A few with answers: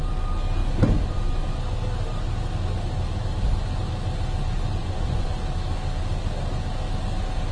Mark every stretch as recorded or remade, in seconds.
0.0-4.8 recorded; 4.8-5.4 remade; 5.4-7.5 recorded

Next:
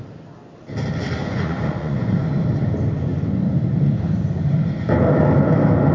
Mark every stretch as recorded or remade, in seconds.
0.0-1.2 recorded; 1.2-2.3 remade; 2.3-5.9 recorded

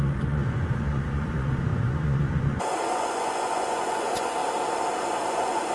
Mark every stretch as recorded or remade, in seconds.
0.0-4.4 remade; 4.4-5.0 recorded; 5.0-5.7 remade

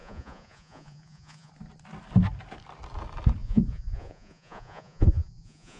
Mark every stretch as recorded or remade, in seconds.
0.0-1.5 remade; 1.5-3.4 recorded; 3.4-5.8 remade